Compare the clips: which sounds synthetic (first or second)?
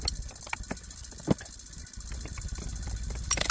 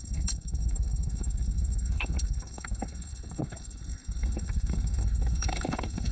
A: second